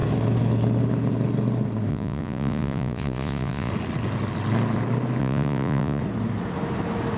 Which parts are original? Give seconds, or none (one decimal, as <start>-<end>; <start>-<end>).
0.0-1.9; 3.7-5.2; 6.0-7.2